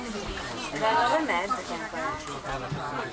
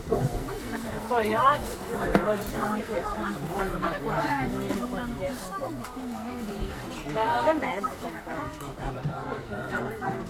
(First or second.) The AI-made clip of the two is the second